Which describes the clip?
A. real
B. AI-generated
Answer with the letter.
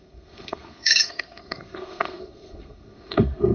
B